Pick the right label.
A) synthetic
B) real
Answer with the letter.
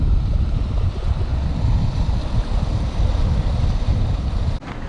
A